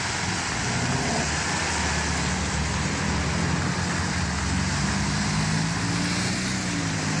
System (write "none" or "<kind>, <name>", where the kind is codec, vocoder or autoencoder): none